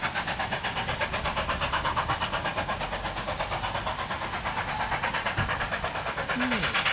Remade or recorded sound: recorded